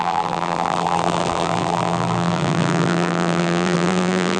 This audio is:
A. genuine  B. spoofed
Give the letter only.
B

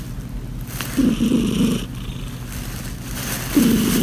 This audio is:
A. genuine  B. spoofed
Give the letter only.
A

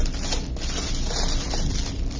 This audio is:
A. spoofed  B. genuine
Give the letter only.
B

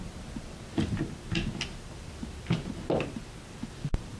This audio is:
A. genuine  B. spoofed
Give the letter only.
B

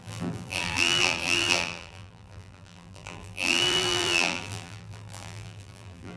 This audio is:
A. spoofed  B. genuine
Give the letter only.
A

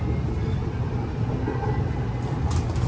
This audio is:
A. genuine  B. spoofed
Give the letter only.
A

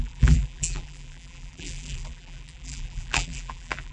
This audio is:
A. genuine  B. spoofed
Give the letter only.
B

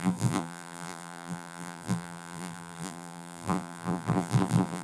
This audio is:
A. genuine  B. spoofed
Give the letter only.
B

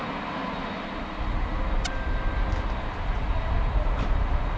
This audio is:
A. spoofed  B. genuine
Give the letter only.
B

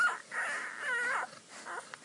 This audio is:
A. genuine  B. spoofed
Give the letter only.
A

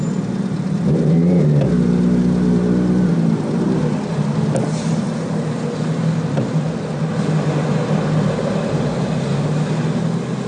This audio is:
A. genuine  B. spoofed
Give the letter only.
A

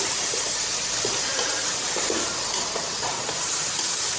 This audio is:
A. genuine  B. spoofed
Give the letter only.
A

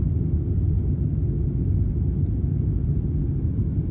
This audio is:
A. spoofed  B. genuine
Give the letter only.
B